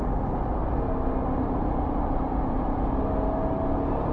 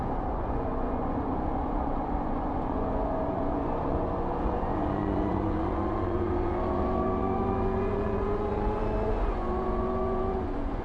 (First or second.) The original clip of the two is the first